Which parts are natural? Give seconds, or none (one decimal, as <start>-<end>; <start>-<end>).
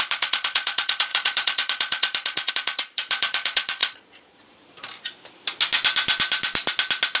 4.9-7.2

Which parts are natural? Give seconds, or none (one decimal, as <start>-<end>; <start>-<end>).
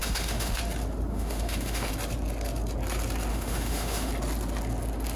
0.6-1.1; 1.9-3.3; 4.1-5.2